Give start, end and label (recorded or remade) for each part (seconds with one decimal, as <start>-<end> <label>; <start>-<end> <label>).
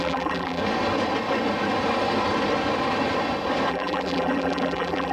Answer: 0.0-0.6 remade; 0.6-3.7 recorded; 3.7-5.1 remade